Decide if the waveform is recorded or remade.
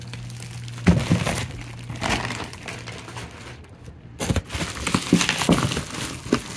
recorded